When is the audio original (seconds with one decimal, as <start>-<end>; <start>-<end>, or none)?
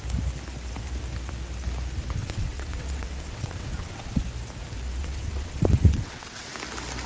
0.0-2.2; 4.2-5.0; 6.5-7.1